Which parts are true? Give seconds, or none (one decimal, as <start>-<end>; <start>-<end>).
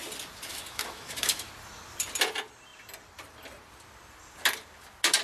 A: 0.0-0.5; 1.5-5.2